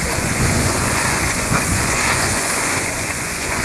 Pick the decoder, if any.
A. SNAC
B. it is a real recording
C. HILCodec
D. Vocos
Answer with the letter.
D